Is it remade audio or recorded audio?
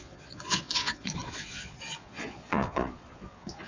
remade